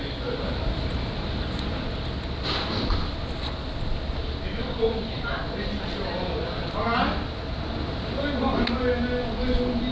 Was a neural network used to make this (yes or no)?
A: no